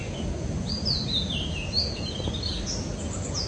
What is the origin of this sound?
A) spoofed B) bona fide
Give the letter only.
B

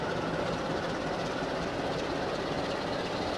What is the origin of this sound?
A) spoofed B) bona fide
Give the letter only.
B